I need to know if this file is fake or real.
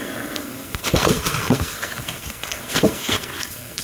fake